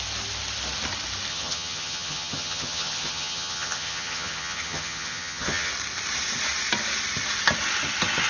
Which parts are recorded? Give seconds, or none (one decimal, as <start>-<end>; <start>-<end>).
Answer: 0.0-1.3; 5.7-8.3